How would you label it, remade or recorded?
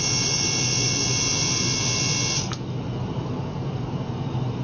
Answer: recorded